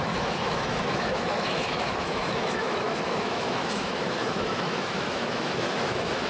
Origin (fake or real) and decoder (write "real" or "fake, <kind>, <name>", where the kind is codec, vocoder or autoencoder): fake, autoencoder, DAC-VAE